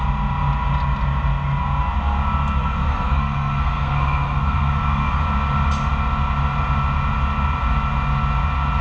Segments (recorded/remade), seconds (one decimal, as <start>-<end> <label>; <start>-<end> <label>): 0.0-2.6 recorded; 2.6-5.2 remade; 5.2-8.8 recorded